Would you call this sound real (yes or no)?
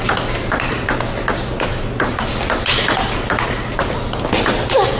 yes